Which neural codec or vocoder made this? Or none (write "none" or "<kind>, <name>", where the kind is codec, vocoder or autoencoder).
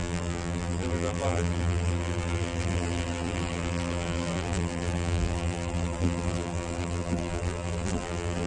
vocoder, BigVGAN v2